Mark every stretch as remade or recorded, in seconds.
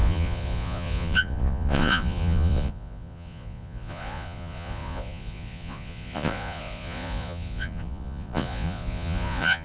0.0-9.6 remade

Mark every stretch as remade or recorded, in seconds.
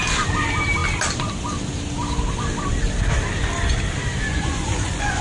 0.0-4.3 recorded; 4.3-5.2 remade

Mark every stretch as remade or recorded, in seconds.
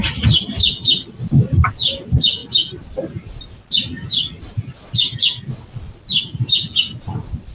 0.0-7.5 recorded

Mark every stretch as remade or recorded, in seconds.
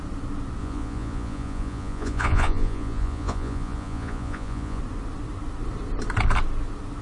0.0-0.6 recorded; 0.6-4.8 remade; 4.8-7.0 recorded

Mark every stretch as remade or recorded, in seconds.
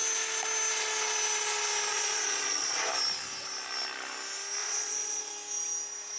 0.0-1.9 recorded; 1.9-2.9 remade; 2.9-4.6 recorded; 4.6-5.3 remade; 5.3-6.2 recorded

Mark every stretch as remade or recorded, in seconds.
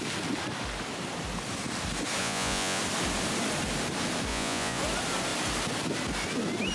0.0-2.2 recorded; 2.2-2.8 remade; 2.8-4.3 recorded; 4.3-4.8 remade; 4.8-6.7 recorded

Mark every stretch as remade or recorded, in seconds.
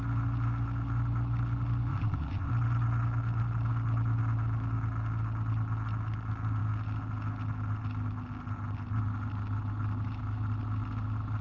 0.0-1.9 recorded; 1.9-2.5 remade; 2.5-11.4 recorded